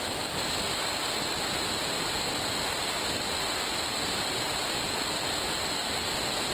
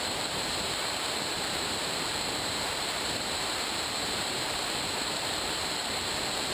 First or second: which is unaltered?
first